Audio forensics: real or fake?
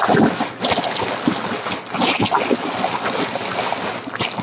real